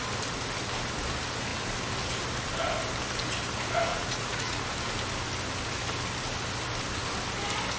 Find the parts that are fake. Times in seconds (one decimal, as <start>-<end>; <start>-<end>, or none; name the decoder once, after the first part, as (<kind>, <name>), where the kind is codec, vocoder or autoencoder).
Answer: 3.9-4.6 (vocoder, Vocos)